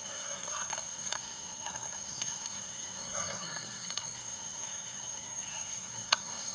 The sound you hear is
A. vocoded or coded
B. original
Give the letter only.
A